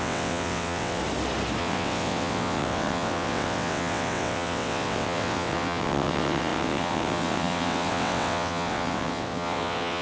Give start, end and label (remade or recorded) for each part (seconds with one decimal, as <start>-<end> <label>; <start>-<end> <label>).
0.0-1.0 remade; 1.0-1.6 recorded; 1.6-10.0 remade